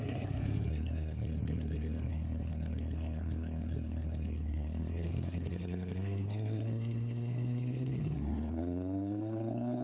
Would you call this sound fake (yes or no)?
yes